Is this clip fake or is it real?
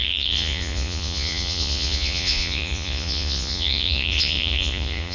fake